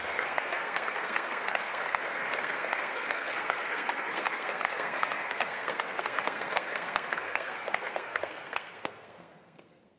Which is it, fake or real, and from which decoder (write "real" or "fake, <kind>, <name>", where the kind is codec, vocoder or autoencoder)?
fake, codec, SNAC